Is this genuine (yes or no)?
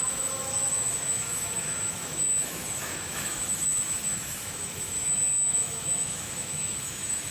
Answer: no